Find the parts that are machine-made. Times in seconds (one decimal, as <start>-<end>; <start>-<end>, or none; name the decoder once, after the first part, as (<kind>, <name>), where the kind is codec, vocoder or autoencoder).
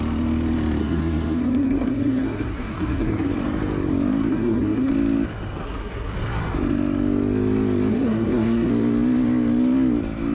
0.8-3.3 (codec, SNAC); 4.3-4.9; 5.6-6.1; 7.9-8.7